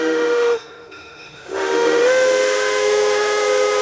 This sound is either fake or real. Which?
fake